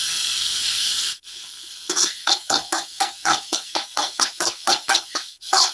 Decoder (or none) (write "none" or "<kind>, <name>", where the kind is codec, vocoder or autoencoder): codec, SNAC